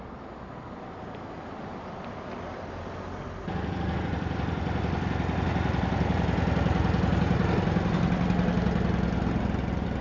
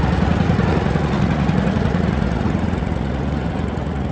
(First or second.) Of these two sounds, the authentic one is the first